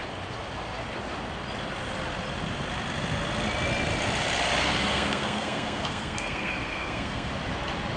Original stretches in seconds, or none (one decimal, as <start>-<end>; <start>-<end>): 0.0-4.9; 7.3-8.0